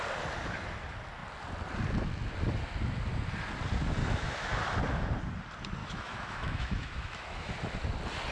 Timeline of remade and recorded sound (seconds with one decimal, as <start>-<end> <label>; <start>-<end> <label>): 0.0-4.0 recorded; 4.0-4.5 remade; 4.5-5.8 recorded; 5.8-7.5 remade; 7.5-8.3 recorded